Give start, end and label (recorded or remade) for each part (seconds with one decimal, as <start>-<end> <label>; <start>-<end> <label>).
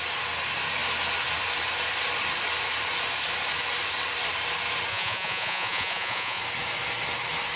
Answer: 0.0-4.9 recorded; 4.9-6.4 remade; 6.4-7.6 recorded